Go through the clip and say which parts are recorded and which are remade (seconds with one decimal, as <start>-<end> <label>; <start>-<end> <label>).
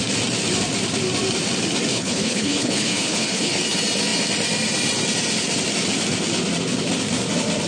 0.0-1.9 recorded; 1.9-3.6 remade; 3.6-7.7 recorded